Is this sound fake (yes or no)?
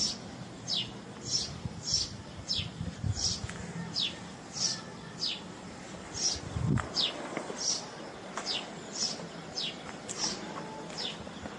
no